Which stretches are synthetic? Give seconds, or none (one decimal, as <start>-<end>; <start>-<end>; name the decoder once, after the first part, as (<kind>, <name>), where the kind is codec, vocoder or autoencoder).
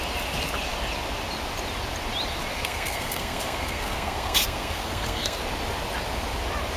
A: 2.5-5.4 (codec, SNAC)